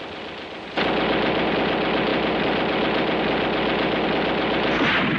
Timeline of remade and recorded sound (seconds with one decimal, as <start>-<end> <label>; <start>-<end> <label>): 0.0-5.2 recorded